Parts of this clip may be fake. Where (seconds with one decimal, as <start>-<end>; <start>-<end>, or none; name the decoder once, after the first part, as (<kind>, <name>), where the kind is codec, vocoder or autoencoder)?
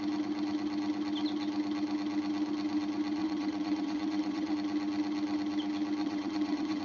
3.2-4.5 (vocoder, WaveNeXt); 6.0-6.8